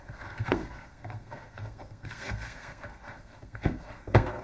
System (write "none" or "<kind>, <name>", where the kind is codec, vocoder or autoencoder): codec, SNAC